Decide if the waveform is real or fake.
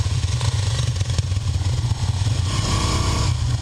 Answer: fake